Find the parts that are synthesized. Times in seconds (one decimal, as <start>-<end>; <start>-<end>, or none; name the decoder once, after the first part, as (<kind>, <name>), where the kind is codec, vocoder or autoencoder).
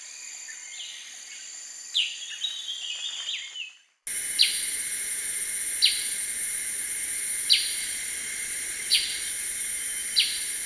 7.8-9.3 (vocoder, Vocos)